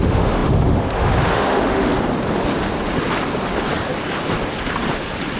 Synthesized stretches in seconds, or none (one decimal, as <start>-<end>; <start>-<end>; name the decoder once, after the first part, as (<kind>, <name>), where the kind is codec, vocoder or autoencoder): 0.0-1.9 (autoencoder, DAC-VAE)